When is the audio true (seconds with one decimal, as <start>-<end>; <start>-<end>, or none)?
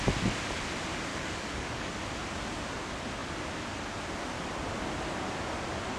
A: 0.0-1.1; 1.9-6.0